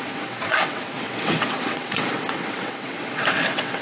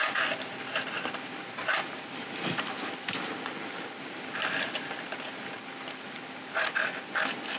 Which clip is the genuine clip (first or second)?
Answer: second